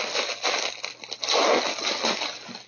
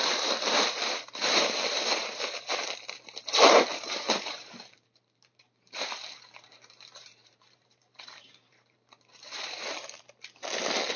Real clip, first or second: first